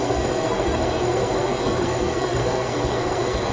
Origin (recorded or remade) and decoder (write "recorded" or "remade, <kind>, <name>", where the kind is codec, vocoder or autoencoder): remade, codec, SNAC